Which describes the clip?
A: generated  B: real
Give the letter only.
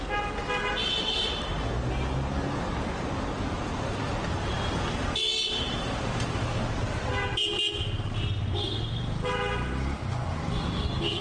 B